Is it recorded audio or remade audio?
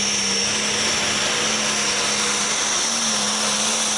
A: recorded